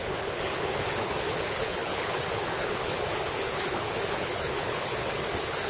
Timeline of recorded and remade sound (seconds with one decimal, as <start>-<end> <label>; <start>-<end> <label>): 0.0-5.7 remade